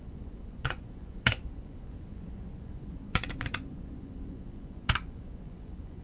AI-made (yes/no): yes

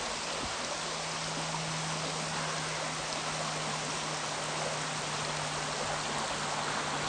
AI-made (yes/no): no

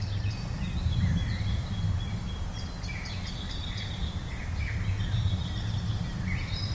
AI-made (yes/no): no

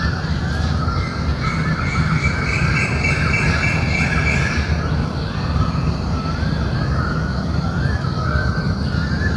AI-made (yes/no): no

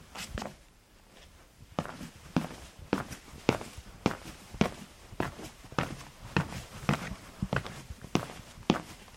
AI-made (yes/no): yes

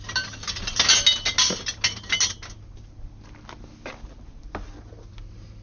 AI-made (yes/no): no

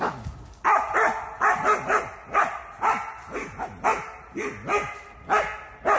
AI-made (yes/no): no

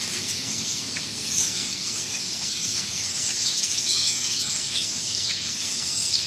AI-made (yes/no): yes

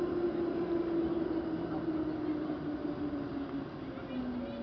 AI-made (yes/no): no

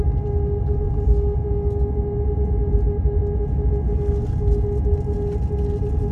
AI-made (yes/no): no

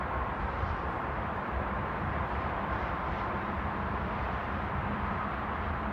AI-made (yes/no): yes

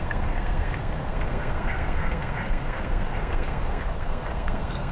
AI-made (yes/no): yes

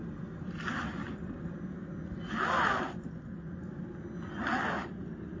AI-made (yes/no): no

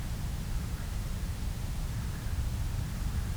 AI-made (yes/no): no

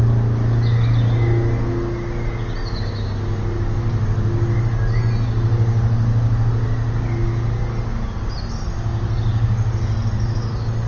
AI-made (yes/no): no